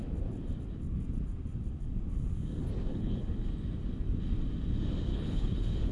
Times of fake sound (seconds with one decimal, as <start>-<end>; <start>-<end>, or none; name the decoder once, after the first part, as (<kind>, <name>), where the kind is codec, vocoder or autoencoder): 2.9-3.5 (codec, HILCodec); 5.1-5.9